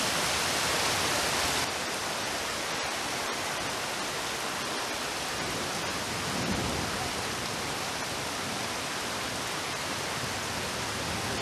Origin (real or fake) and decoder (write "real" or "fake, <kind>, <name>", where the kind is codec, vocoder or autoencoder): real